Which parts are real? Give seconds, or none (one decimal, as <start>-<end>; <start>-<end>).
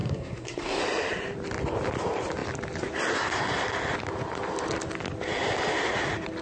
0.8-6.4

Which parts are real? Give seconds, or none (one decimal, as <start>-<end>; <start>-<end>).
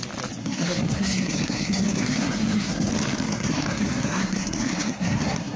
0.0-0.4; 2.9-3.3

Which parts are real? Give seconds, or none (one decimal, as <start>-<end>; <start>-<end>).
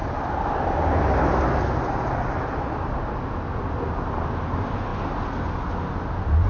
0.0-6.5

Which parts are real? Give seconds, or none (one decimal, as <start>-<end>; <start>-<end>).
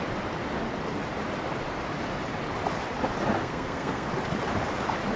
0.0-3.4; 4.1-5.2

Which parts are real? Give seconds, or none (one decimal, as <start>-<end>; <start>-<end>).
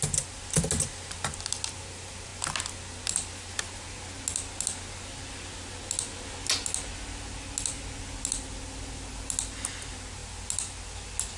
0.0-11.4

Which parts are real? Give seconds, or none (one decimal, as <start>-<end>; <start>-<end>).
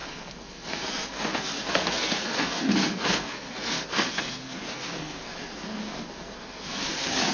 none